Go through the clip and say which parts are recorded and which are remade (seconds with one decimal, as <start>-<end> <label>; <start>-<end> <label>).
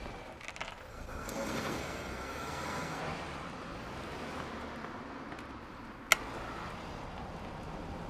0.0-0.9 recorded; 0.9-3.0 remade; 3.0-8.1 recorded